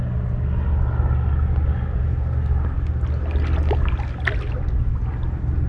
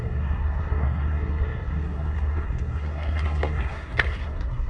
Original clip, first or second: first